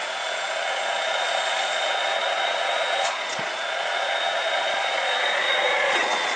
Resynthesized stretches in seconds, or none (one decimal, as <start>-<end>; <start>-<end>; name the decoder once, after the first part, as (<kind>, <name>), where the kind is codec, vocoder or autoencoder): 0.0-6.4 (vocoder, Vocos)